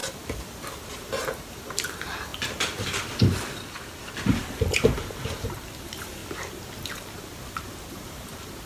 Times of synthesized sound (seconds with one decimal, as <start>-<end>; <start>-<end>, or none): 0.9-2.3; 4.3-6.2; 7.9-8.7